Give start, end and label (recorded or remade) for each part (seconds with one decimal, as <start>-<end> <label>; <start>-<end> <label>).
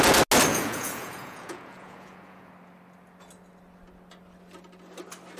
0.0-0.5 recorded; 0.5-2.5 remade; 2.5-5.4 recorded